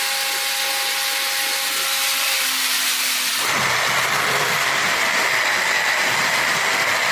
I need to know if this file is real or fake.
real